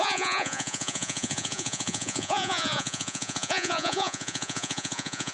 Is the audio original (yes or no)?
no